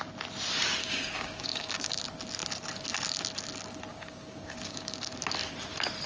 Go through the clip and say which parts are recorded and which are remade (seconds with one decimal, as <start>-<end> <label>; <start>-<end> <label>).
0.0-0.8 recorded; 0.8-2.0 remade; 2.0-3.9 recorded; 3.9-5.1 remade; 5.1-6.1 recorded